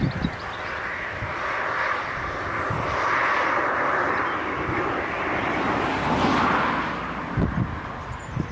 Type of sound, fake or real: real